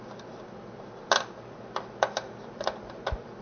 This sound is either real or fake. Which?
real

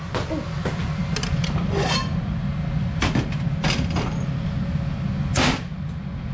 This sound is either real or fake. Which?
real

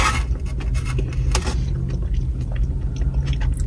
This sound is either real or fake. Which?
real